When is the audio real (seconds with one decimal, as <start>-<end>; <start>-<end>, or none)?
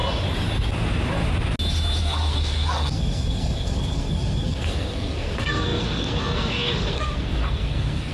0.0-2.0